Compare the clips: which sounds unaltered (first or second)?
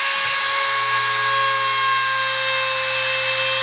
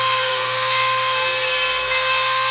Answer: first